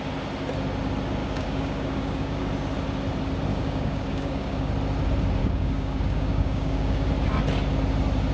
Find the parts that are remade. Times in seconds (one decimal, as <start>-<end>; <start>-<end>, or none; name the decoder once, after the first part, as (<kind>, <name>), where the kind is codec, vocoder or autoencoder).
1.2-2.5 (codec, DAC); 3.5-4.7; 5.4-7.1